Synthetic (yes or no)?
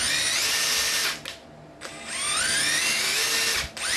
no